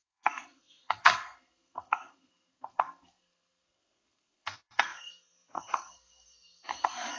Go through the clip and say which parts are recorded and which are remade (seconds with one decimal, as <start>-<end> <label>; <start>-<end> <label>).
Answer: 0.0-7.2 remade